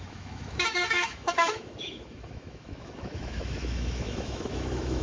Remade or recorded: remade